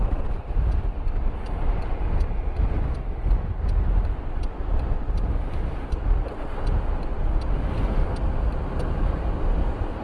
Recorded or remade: recorded